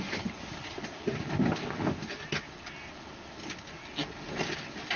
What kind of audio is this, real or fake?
real